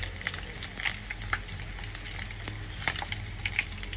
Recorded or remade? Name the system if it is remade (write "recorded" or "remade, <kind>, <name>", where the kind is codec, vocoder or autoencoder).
recorded